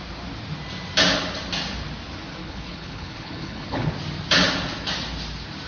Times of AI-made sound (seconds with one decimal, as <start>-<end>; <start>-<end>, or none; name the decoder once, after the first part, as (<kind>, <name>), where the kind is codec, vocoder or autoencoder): 2.4-3.9 (codec, HILCodec)